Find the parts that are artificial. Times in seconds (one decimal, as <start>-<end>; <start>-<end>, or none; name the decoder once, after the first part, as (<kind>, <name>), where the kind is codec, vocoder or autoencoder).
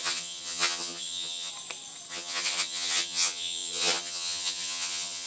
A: 0.0-1.5 (vocoder, HiFi-GAN); 2.1-5.3